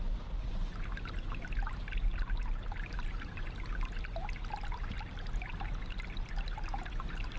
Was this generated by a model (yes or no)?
no